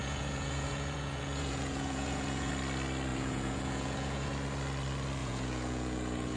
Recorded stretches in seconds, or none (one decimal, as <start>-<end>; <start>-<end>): 2.5-3.1; 4.3-5.2